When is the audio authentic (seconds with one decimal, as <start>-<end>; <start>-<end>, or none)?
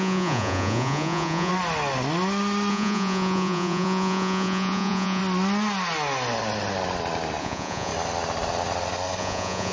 1.5-2.7; 5.2-7.4; 7.9-9.2